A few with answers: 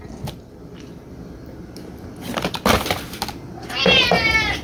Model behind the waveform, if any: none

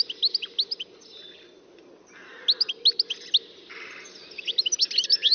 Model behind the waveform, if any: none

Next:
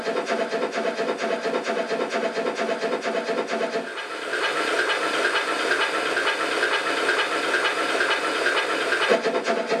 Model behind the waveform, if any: none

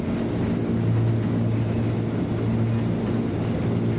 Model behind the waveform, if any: none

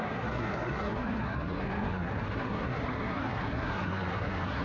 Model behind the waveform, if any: codec, SNAC